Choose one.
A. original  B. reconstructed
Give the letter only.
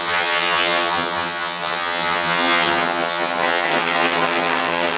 B